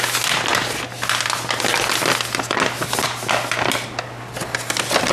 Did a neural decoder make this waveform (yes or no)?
no